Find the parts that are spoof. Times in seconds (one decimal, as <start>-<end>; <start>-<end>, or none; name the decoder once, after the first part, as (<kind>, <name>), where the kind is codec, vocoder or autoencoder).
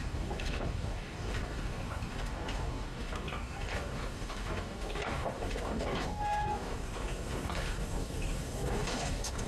0.0-9.5 (codec, DAC)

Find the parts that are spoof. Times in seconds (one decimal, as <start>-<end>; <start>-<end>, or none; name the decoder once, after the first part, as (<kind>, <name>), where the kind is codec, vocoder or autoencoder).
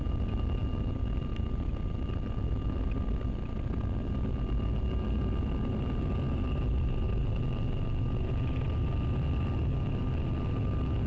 none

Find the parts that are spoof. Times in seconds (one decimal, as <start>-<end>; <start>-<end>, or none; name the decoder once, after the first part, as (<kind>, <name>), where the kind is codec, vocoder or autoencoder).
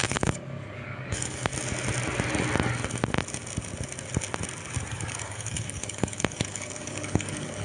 0.0-1.5 (codec, DAC); 4.9-7.6